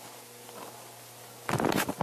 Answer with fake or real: real